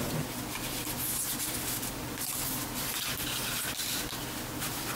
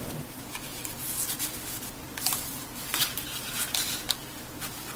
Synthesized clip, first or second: second